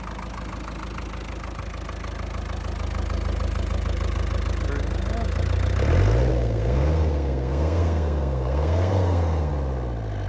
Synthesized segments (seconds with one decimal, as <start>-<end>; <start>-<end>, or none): 6.3-9.5

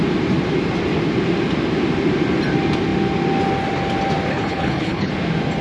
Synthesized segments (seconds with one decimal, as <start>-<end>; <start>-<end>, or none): 4.3-5.1

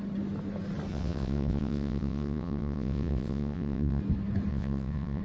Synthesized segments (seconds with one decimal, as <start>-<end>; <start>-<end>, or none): 0.9-4.0; 4.5-5.2

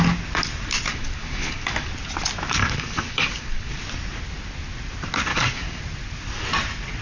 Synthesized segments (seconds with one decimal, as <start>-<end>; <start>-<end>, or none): 0.9-1.9; 2.6-3.7; 5.3-5.8

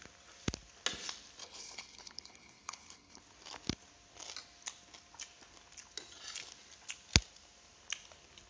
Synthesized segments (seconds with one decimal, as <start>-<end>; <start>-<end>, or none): 1.4-3.2